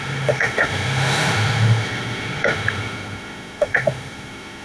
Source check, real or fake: fake